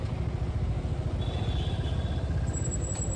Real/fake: real